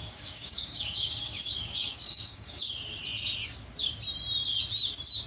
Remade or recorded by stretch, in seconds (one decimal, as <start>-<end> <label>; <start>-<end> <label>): 0.0-2.7 remade; 2.7-5.3 recorded